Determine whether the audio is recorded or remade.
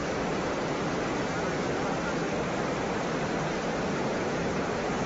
recorded